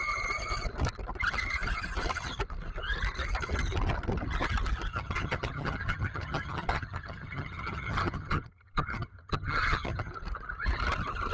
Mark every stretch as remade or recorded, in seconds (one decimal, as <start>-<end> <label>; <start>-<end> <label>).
0.0-4.9 recorded; 4.9-10.1 remade; 10.1-11.3 recorded